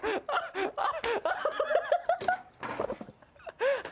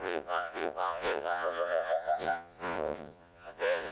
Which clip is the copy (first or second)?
second